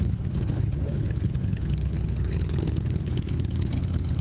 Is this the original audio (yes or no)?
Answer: no